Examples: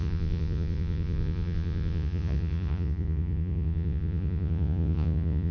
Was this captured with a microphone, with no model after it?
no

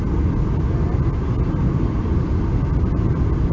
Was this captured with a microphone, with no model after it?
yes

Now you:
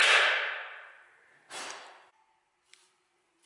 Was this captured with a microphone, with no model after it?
yes